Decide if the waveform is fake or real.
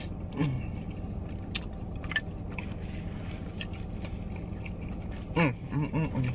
real